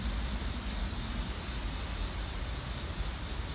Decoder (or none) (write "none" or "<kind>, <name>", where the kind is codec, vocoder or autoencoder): none